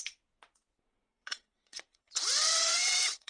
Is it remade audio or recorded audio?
remade